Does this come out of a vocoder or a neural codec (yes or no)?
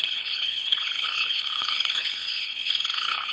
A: yes